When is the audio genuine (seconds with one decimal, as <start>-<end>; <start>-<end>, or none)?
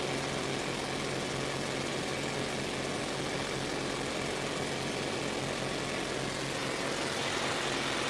0.0-8.1